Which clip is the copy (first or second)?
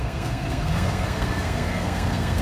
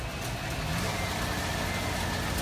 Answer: first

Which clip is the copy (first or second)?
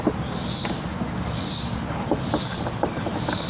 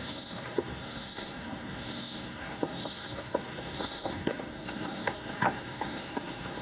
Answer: second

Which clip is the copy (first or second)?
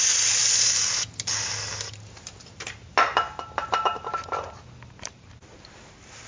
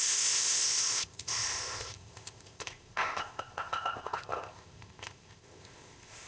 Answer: second